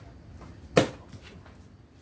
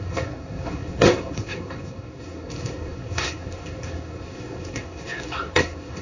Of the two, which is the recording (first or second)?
first